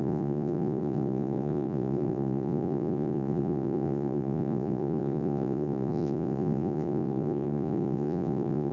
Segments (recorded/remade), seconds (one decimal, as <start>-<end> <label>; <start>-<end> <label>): 0.0-8.7 remade